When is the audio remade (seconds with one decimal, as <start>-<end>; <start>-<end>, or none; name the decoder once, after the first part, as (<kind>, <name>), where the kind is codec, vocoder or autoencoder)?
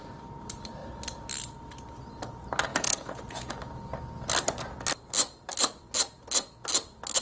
2.7-3.5 (vocoder, Vocos)